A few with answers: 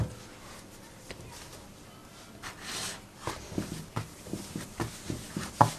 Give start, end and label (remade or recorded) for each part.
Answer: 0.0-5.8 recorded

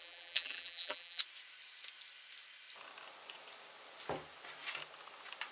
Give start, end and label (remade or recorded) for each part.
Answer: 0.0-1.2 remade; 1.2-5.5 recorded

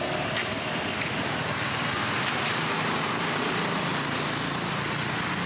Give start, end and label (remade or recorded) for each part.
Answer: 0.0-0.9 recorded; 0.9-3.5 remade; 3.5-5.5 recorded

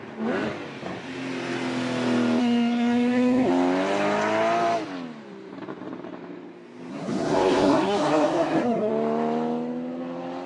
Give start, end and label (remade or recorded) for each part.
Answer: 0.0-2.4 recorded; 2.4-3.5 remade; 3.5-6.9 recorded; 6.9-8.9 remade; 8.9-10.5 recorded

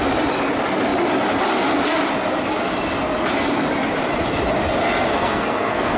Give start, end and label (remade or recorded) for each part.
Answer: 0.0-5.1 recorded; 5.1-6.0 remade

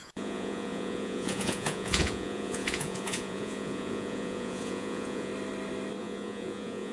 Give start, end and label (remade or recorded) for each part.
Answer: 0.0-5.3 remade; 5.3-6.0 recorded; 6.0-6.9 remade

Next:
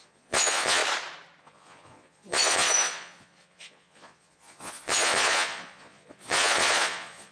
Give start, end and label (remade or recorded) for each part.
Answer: 0.0-0.8 remade; 0.8-1.4 recorded; 1.4-7.3 remade